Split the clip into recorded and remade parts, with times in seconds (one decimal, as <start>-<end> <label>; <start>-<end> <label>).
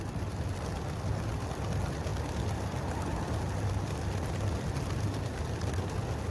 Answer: 0.0-6.3 recorded